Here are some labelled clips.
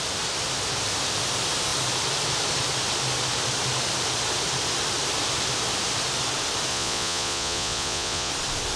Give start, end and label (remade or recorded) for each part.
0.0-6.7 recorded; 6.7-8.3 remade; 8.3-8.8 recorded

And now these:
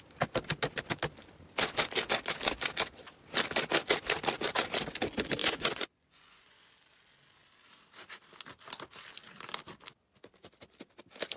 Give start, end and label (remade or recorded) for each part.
0.0-5.4 recorded; 5.4-6.7 remade; 6.7-11.4 recorded

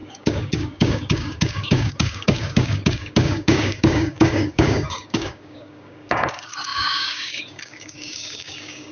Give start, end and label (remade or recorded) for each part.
0.0-8.9 remade

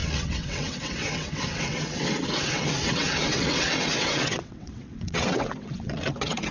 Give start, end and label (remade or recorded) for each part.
0.0-6.5 remade

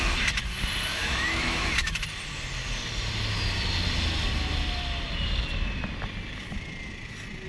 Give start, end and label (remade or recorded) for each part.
0.0-0.9 recorded; 0.9-1.7 remade; 1.7-7.5 recorded

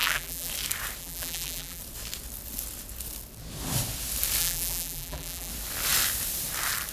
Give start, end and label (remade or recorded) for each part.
0.0-0.5 remade; 0.5-1.0 recorded; 1.0-1.8 remade; 1.8-4.4 recorded; 4.4-5.5 remade; 5.5-6.9 recorded